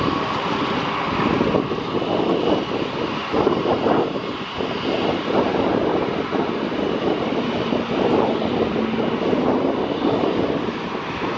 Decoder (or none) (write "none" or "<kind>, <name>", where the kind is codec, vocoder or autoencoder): none